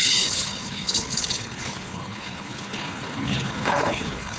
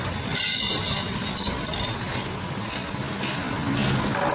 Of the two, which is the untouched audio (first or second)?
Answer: second